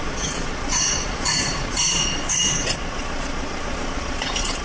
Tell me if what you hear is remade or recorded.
remade